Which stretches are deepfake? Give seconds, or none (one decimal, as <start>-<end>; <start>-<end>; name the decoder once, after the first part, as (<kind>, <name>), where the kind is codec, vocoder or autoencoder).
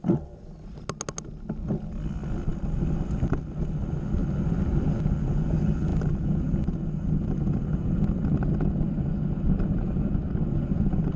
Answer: 4.2-4.9 (vocoder, BigVGAN v2)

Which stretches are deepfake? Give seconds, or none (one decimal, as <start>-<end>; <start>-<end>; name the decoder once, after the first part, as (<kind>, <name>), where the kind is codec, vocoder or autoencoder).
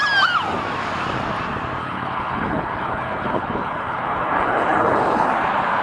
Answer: 1.8-5.3 (codec, HILCodec)